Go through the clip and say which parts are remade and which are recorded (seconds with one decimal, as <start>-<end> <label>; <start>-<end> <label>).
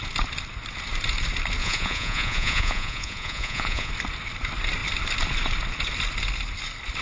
0.0-1.6 recorded; 1.6-3.9 remade; 3.9-7.0 recorded